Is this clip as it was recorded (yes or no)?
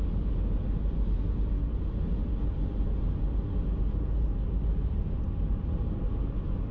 yes